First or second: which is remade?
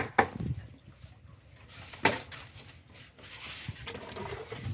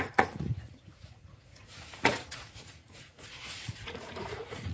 second